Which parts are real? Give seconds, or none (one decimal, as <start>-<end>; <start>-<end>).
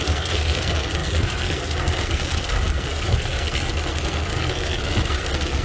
none